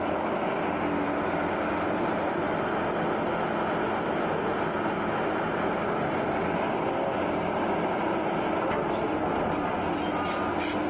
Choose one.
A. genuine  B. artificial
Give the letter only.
A